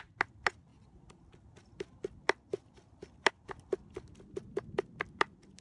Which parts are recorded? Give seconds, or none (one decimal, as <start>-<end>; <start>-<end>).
0.0-5.6